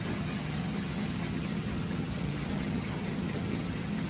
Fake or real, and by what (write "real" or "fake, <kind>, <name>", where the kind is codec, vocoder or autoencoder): fake, vocoder, HiFi-GAN